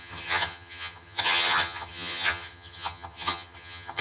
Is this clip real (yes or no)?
no